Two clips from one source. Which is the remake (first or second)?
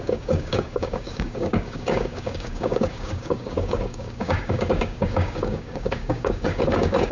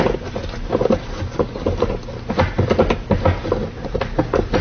first